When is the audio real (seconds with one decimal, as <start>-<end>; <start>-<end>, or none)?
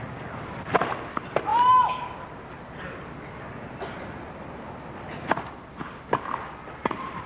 0.0-7.3